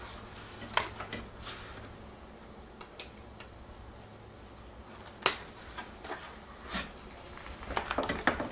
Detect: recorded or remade recorded